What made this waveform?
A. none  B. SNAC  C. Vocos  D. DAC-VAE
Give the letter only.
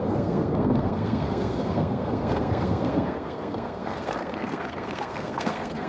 B